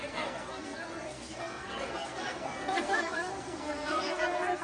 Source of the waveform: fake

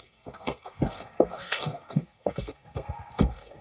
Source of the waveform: fake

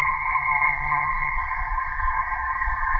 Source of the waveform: fake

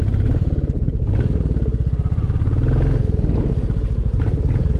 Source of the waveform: real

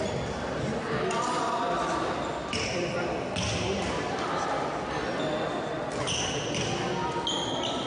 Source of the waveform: real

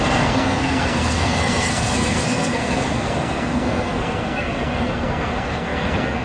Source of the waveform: fake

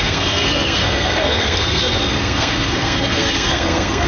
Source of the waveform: fake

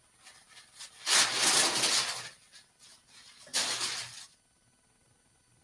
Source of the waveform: real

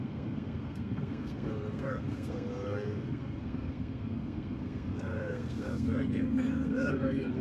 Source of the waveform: fake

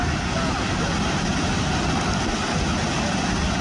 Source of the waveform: real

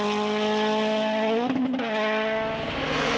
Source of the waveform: real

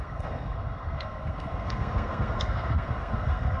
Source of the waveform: fake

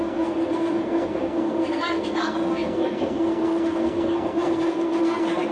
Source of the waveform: fake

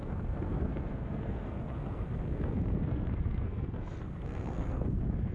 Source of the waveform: fake